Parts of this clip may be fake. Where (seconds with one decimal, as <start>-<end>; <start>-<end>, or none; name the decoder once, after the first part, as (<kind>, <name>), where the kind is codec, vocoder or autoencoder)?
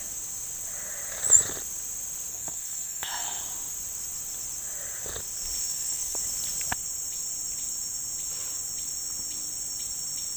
2.3-3.4 (codec, SNAC); 5.6-6.2